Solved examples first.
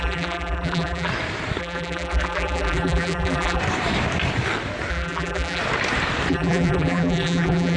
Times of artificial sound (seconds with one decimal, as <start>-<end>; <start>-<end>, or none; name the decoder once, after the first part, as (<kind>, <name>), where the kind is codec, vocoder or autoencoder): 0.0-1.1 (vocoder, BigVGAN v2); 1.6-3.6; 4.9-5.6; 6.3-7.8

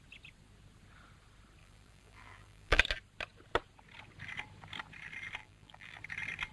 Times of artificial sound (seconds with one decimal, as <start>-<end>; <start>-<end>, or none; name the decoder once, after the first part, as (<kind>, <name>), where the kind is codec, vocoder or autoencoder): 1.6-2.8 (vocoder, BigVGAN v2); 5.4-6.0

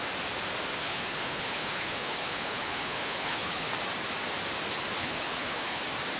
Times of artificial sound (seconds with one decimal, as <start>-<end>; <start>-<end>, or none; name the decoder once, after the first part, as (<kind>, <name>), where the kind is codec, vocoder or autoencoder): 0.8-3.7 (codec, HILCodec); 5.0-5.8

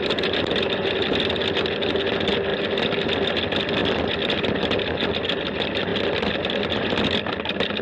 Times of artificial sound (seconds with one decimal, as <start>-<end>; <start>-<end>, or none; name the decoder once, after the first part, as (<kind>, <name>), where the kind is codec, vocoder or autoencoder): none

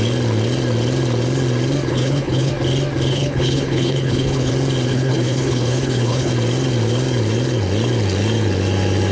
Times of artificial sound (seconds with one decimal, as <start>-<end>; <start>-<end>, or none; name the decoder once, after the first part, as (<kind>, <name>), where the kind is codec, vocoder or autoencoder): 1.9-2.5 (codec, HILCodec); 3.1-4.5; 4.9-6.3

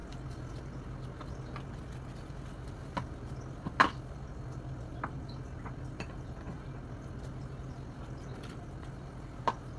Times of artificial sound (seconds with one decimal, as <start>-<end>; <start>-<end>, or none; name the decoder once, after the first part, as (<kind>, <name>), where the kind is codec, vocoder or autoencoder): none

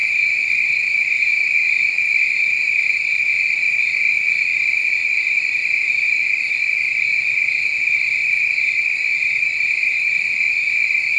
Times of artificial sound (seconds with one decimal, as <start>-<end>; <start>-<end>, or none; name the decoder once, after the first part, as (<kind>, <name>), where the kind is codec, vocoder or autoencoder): 0.0-1.5 (vocoder, BigVGAN v2); 8.2-10.1

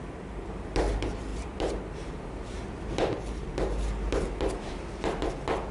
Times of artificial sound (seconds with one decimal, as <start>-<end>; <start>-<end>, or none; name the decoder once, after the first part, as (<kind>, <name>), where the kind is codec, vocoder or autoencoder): none